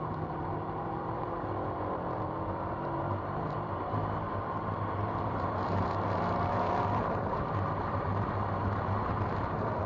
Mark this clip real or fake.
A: fake